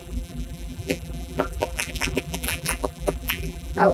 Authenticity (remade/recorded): remade